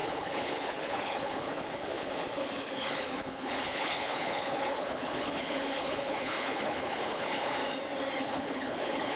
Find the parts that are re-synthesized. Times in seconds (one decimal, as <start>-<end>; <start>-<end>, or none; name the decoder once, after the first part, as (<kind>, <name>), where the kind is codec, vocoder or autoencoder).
0.0-7.6 (codec, HILCodec); 8.2-9.2